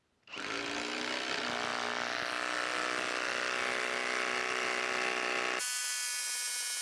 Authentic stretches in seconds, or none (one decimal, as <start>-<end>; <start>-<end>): 0.0-6.8